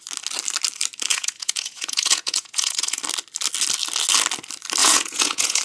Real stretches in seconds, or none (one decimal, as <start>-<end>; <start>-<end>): 0.0-1.1; 3.0-4.8